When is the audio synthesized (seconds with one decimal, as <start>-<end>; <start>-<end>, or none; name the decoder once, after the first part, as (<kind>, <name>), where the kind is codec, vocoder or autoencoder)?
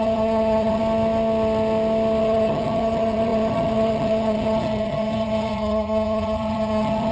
0.0-0.8 (vocoder, HiFi-GAN); 2.2-7.1